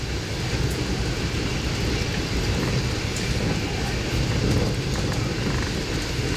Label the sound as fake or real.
real